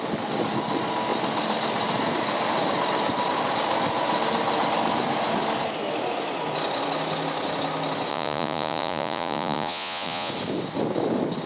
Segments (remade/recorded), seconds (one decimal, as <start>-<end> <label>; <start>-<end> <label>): 0.0-8.1 recorded; 8.1-10.3 remade; 10.3-11.5 recorded